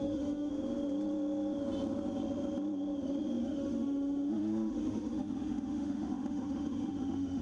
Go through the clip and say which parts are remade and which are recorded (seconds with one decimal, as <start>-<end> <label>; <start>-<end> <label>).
0.0-0.5 remade; 0.5-3.4 recorded; 3.4-7.4 remade